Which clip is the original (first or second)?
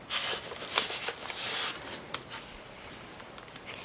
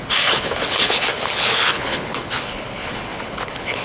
first